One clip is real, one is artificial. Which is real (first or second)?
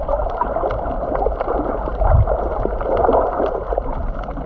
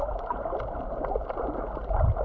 second